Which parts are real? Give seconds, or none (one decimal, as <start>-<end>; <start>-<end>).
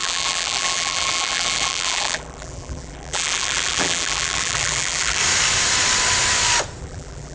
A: 5.2-6.8